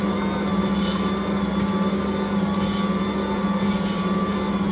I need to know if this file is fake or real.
real